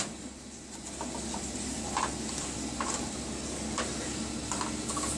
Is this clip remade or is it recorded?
recorded